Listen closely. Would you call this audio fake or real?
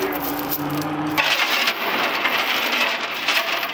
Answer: fake